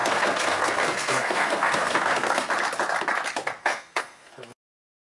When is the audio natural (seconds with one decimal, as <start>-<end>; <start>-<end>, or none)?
2.5-3.6